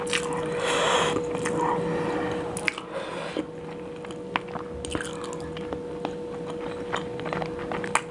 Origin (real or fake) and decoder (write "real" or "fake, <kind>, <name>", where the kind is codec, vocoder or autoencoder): real